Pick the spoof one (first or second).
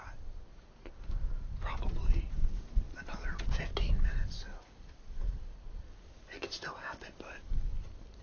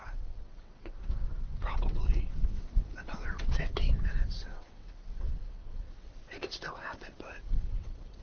second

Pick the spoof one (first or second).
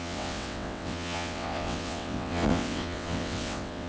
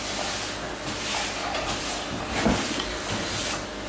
first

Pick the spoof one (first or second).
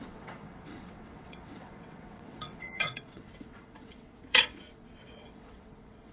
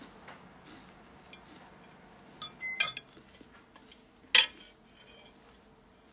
first